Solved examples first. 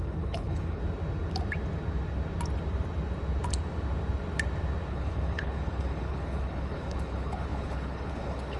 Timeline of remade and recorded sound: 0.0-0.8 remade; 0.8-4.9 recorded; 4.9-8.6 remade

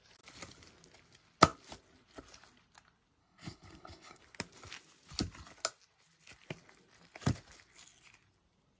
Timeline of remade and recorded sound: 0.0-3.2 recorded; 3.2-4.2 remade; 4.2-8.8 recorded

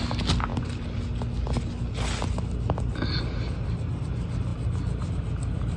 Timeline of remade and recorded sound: 0.0-5.8 recorded

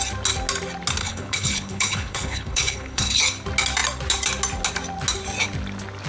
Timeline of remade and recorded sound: 0.0-1.0 recorded; 1.0-3.2 remade; 3.2-6.1 recorded

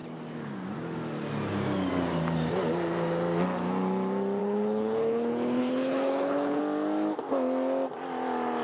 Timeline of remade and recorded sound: 0.0-4.4 recorded; 4.4-6.6 remade; 6.6-8.6 recorded

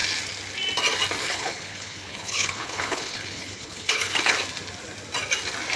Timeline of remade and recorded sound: 0.0-1.2 recorded; 1.2-4.3 remade; 4.3-5.8 recorded